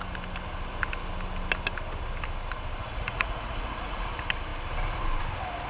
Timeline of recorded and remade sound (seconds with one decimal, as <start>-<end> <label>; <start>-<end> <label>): 0.0-2.8 recorded; 2.8-4.1 remade; 4.1-5.7 recorded